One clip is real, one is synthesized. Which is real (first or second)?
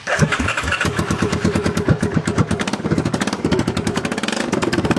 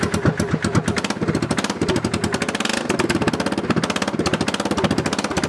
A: second